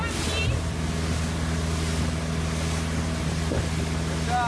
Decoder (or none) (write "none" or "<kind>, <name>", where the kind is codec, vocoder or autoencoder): none